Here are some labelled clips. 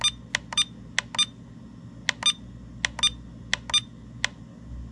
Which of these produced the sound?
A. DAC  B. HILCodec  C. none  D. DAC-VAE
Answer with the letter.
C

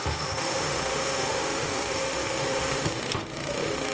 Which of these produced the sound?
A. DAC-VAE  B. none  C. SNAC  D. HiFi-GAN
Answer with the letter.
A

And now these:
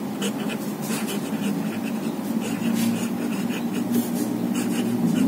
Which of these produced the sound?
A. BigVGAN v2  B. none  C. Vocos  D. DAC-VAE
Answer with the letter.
B